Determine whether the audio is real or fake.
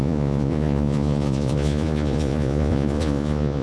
fake